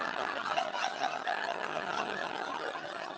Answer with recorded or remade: remade